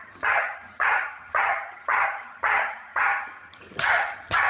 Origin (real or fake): fake